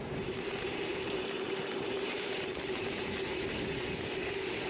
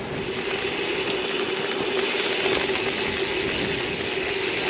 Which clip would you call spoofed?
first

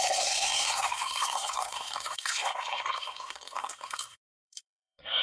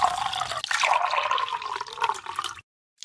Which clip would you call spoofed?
first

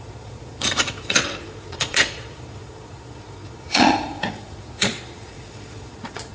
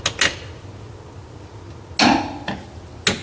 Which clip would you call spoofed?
first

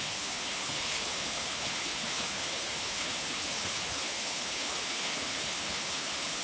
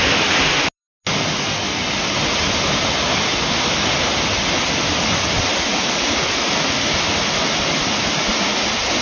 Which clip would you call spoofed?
first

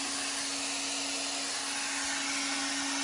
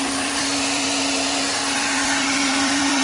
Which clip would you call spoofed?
second